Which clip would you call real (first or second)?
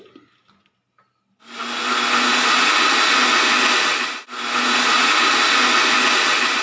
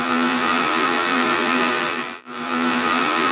first